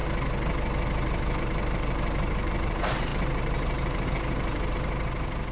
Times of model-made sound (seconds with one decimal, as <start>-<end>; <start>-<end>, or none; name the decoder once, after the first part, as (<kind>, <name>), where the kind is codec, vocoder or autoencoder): 1.4-5.5 (vocoder, BigVGAN v2)